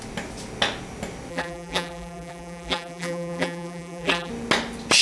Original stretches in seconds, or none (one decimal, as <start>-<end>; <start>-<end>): 0.0-1.3; 4.3-5.0